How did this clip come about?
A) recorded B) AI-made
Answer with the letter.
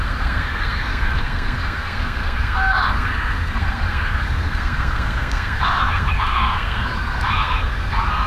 B